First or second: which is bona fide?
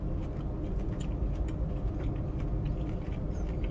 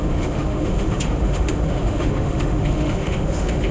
first